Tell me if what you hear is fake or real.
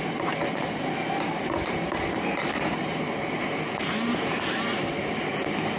fake